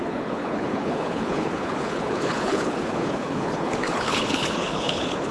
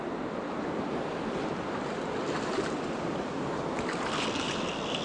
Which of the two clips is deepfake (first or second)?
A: first